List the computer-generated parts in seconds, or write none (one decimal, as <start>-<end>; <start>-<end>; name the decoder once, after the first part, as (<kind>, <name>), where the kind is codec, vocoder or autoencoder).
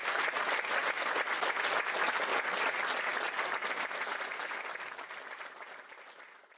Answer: none